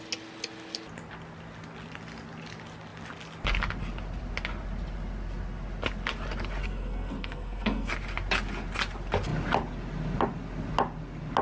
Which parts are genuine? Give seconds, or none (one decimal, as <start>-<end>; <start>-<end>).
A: 0.0-6.6; 7.9-11.4